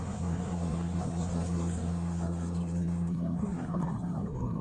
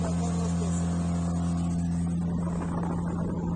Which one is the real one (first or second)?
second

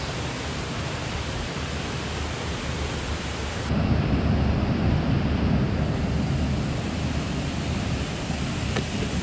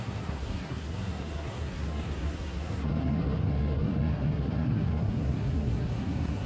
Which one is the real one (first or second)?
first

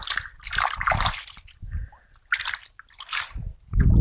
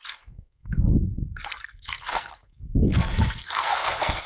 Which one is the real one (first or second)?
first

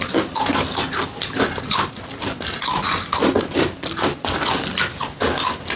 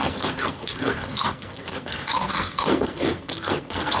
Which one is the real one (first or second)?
first